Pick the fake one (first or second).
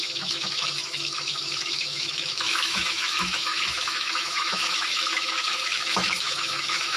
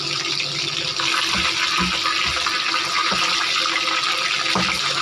first